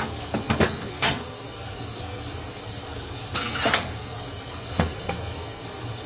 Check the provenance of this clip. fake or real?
fake